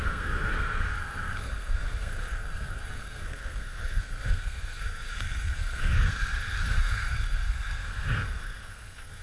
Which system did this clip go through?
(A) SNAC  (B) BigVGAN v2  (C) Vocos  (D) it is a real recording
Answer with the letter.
A